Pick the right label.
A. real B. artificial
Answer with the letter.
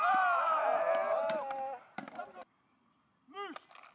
A